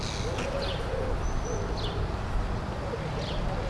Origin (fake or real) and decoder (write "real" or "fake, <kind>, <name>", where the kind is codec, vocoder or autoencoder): real